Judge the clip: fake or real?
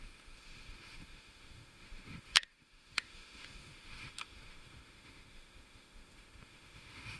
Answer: fake